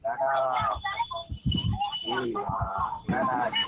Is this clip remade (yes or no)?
yes